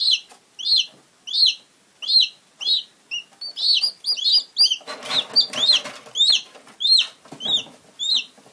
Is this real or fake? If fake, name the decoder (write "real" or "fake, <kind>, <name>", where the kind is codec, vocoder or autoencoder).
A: real